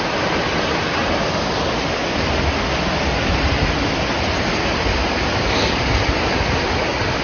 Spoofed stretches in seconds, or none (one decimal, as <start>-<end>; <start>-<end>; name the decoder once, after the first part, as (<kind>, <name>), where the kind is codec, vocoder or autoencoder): none